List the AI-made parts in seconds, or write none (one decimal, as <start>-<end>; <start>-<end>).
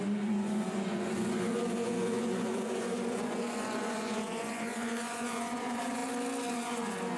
0.0-6.0; 6.5-7.2